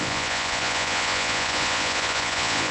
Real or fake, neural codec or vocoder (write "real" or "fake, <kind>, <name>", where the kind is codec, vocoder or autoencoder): fake, vocoder, Vocos